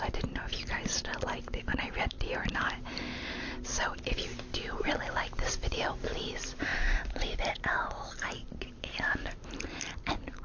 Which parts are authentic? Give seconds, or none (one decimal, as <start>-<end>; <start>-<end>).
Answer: none